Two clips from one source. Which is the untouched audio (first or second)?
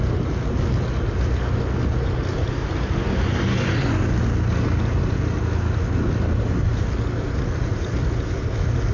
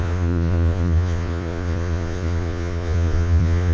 first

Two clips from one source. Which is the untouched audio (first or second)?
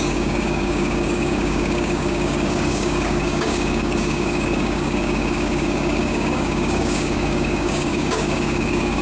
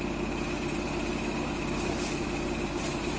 second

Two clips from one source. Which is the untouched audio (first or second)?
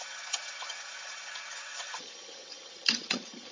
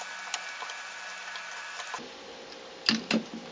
second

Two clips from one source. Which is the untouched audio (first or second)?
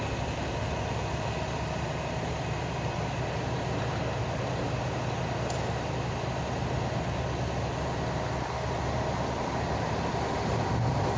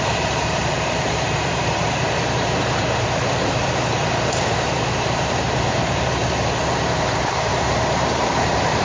first